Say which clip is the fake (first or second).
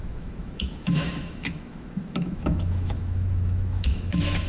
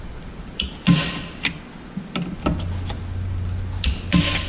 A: first